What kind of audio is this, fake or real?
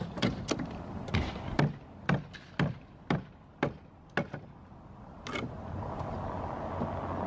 real